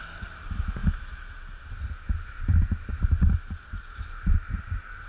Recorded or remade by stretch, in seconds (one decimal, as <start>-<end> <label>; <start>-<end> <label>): 0.0-5.1 recorded